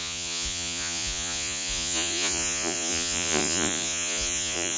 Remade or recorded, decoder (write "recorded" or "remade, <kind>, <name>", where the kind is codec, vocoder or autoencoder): remade, vocoder, Vocos